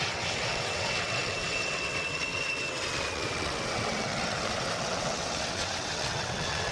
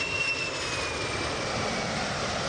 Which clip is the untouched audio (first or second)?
second